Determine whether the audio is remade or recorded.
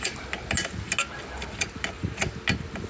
recorded